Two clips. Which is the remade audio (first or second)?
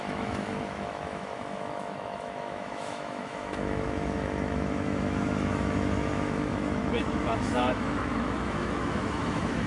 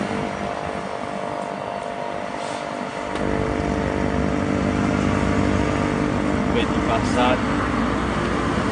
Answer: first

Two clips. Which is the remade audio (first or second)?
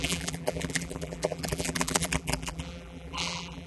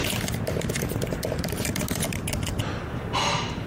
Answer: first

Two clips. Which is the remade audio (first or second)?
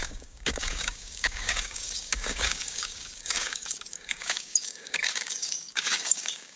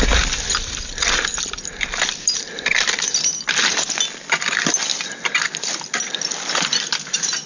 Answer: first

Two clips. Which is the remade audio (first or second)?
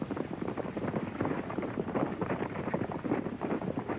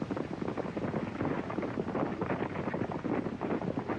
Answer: first